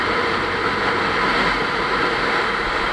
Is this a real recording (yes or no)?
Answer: yes